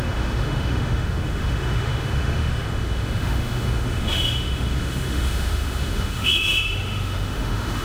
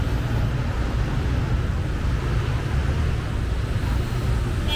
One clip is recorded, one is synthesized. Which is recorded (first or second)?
second